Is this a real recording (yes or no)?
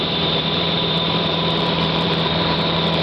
no